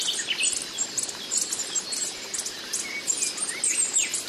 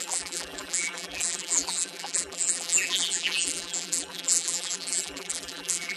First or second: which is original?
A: first